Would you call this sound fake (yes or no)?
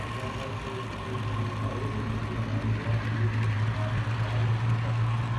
no